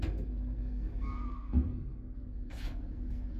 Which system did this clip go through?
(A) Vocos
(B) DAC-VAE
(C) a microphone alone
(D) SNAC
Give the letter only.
D